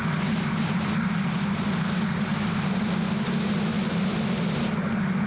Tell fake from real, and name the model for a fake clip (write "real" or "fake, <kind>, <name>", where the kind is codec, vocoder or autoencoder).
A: real